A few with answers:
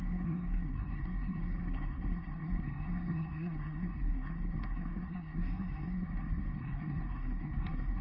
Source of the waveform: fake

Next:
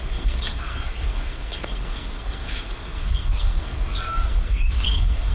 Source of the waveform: fake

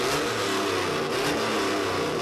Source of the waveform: real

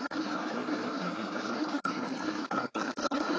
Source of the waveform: fake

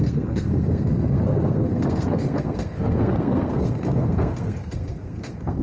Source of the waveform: fake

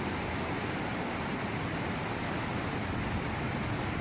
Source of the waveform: real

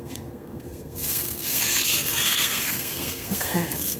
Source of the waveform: fake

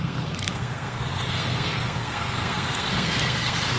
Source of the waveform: fake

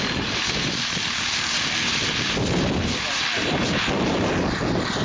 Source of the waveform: real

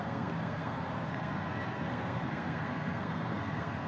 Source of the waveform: fake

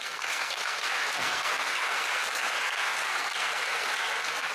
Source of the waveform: fake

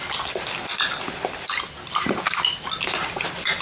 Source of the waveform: real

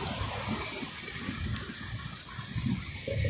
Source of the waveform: real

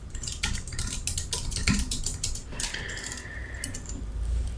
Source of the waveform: real